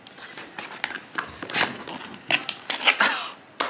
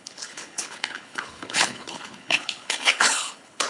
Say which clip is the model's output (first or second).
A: second